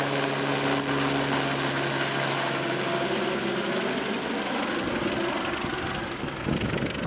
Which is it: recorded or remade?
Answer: recorded